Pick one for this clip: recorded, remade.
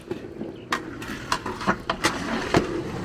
recorded